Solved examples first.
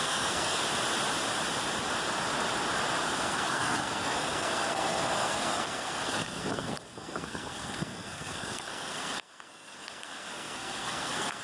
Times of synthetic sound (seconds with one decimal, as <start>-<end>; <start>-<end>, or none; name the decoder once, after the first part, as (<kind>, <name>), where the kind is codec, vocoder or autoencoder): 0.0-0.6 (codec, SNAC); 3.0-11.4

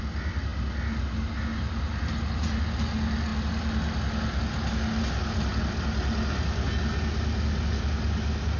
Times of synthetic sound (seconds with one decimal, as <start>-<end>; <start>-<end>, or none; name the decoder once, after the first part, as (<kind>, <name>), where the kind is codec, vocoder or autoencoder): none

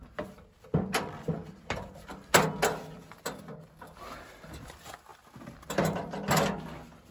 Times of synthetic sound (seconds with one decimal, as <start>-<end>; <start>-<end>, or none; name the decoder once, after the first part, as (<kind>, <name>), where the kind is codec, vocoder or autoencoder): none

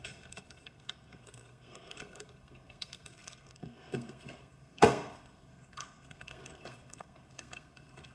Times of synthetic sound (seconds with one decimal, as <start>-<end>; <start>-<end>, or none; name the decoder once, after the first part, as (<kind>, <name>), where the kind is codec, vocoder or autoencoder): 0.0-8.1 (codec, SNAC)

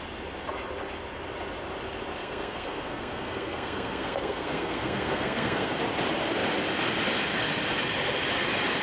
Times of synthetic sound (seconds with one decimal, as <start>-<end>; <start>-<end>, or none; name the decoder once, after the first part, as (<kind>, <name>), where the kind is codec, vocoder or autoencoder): 2.2-5.7 (codec, SNAC)

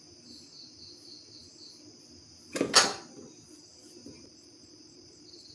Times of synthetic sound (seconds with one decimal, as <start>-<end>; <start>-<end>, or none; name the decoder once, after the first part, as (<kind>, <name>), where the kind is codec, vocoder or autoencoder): none

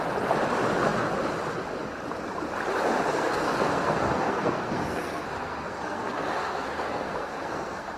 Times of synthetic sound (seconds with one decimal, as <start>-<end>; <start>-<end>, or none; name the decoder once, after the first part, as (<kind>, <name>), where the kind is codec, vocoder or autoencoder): 3.1-8.0 (codec, SNAC)

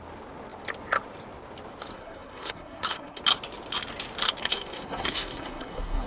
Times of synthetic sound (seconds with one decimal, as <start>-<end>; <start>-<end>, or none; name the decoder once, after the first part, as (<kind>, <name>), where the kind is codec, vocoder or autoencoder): 1.9-3.2 (codec, SNAC); 4.4-6.1